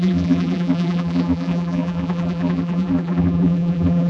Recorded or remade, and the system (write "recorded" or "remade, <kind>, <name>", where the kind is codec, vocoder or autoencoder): remade, vocoder, BigVGAN v2